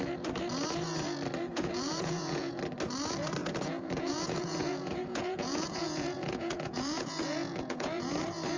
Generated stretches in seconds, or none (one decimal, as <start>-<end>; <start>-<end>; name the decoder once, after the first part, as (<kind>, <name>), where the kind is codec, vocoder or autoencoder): 1.5-2.6 (vocoder, Vocos); 3.4-8.2